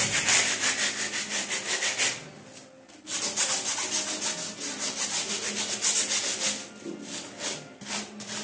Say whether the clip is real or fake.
real